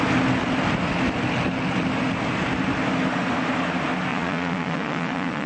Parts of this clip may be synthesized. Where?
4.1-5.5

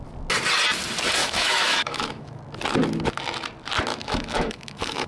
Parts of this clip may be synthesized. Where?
1.2-2.4; 3.9-5.1

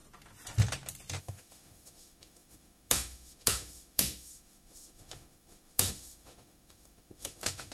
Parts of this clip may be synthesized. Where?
1.2-7.7

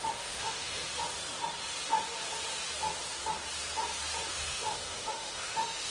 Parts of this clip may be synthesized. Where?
0.0-0.8; 4.3-5.9